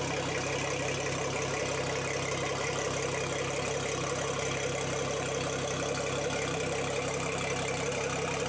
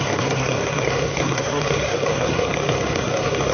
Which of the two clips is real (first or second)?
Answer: first